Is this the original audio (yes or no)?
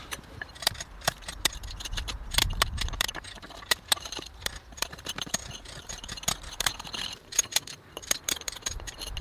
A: no